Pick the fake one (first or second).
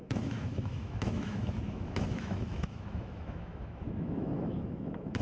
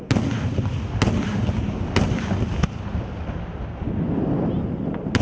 first